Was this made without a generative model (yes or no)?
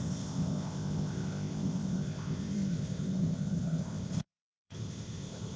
no